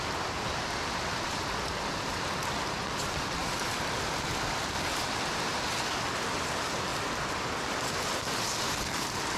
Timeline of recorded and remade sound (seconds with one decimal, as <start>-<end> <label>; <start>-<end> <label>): 0.0-9.4 recorded